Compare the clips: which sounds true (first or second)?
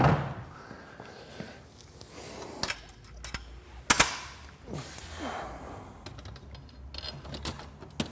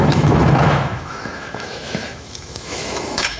first